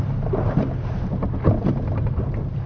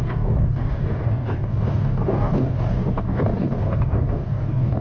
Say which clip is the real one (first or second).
first